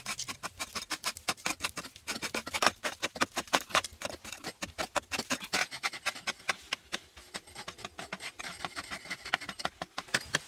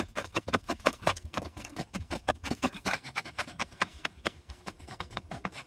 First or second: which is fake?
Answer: second